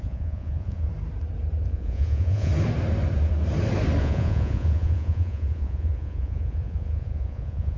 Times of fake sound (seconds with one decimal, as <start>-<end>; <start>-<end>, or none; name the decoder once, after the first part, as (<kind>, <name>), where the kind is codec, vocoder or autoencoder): 0.0-0.9 (vocoder, Vocos); 1.6-2.5; 4.0-7.8